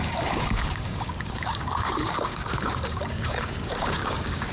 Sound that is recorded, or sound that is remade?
remade